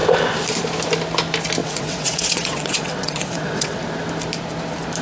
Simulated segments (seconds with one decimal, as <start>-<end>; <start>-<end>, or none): 1.6-3.8